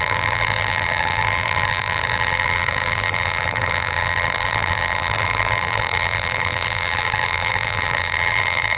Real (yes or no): no